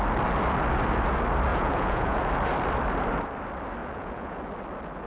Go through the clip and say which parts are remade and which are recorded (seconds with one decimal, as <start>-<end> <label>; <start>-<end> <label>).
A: 0.0-1.5 recorded; 1.5-2.2 remade; 2.2-3.8 recorded; 3.8-4.4 remade; 4.4-5.1 recorded